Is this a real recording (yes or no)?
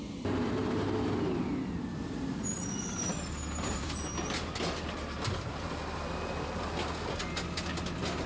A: yes